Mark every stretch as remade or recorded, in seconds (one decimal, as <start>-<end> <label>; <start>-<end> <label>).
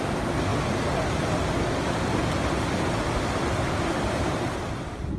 0.0-5.2 recorded